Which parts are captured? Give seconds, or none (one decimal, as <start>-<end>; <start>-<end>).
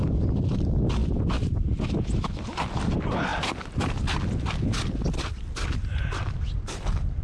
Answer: 3.3-4.4